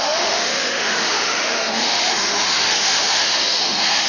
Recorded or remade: remade